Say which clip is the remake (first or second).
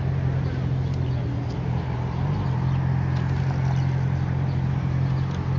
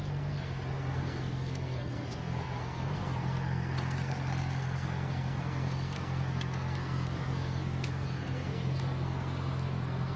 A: second